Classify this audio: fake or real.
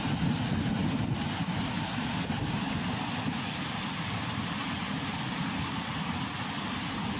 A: real